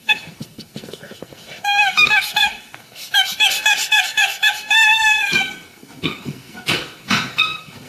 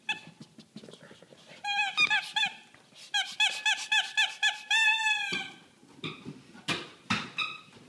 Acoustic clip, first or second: second